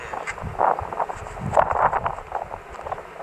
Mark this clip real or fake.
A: fake